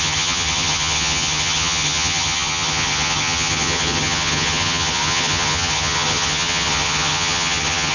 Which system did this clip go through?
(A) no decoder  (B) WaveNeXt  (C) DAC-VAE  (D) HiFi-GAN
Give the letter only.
D